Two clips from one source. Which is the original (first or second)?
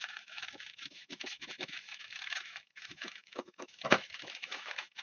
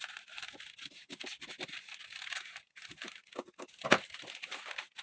second